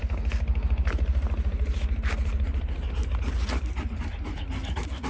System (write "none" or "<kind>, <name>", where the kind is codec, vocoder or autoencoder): none